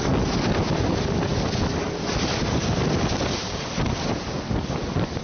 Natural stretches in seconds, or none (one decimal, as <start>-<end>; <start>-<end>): 0.0-5.2